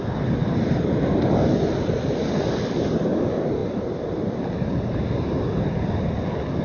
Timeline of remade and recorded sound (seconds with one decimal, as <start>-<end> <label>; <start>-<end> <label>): 0.0-0.4 recorded; 0.4-1.3 remade; 1.3-3.6 recorded; 3.6-5.9 remade; 5.9-6.6 recorded